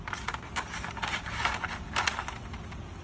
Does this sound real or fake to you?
real